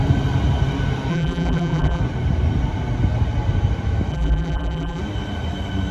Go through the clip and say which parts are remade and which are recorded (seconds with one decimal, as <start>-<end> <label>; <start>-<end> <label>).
0.0-1.1 recorded; 1.1-2.0 remade; 2.0-4.1 recorded; 4.1-5.0 remade; 5.0-5.9 recorded